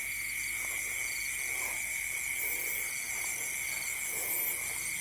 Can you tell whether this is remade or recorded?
recorded